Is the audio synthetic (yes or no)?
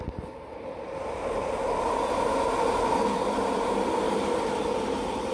yes